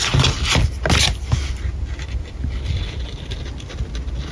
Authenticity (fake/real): real